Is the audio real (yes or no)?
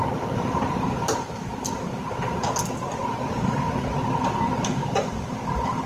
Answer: yes